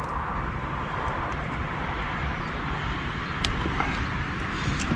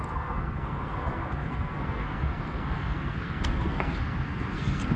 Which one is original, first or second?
first